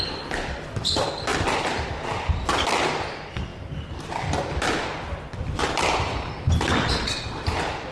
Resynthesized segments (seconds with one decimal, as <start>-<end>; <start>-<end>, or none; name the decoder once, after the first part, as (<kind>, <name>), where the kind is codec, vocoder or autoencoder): 3.5-6.9 (vocoder, BigVGAN v2)